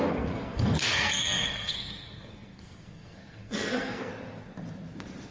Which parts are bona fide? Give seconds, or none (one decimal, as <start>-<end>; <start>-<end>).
4.1-5.3